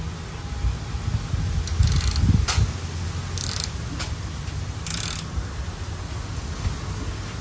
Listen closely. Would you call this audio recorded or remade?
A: recorded